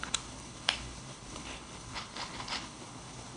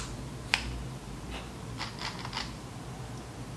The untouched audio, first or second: second